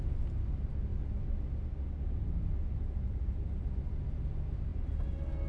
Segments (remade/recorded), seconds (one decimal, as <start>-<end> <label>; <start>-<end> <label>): 0.0-5.5 recorded